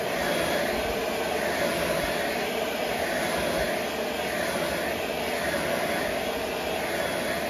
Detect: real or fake real